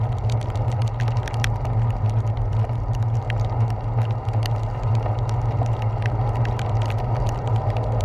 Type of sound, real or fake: real